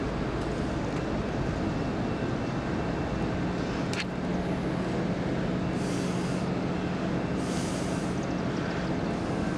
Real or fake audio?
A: real